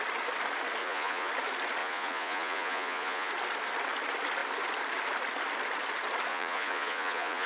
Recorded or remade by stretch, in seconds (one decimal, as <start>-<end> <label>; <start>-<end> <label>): 0.0-0.8 recorded; 0.8-1.3 remade; 1.3-1.8 recorded; 1.8-3.3 remade; 3.3-6.3 recorded; 6.3-7.5 remade